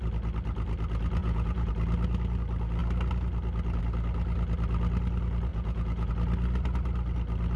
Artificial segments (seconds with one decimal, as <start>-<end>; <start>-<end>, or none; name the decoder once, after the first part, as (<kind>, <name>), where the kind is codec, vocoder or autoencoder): 1.2-1.7 (vocoder, Vocos); 5.5-6.1